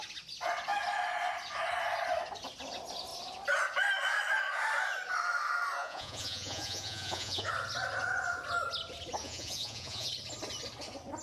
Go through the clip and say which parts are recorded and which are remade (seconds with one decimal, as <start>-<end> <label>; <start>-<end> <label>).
0.0-5.8 recorded; 5.8-7.5 remade; 7.5-9.2 recorded; 9.2-10.1 remade; 10.1-11.2 recorded